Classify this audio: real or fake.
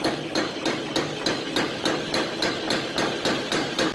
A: real